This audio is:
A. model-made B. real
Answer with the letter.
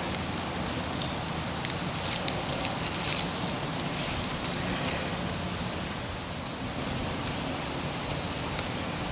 B